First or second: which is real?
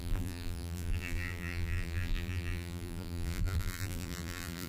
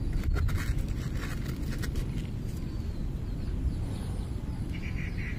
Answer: second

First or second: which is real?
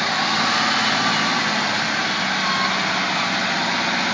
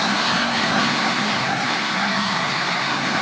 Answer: first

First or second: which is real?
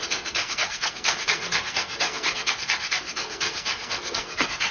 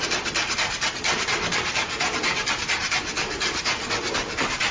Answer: second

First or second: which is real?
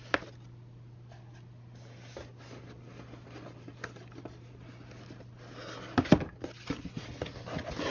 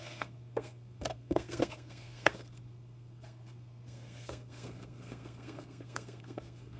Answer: first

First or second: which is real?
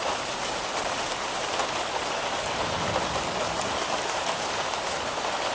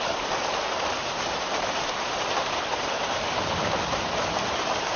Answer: first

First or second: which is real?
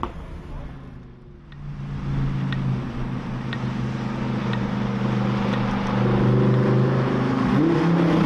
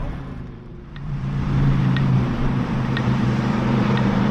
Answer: first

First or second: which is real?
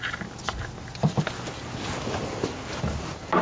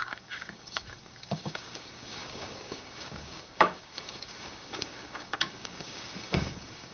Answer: first